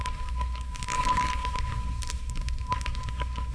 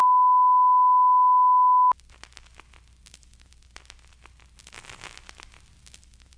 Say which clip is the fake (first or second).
first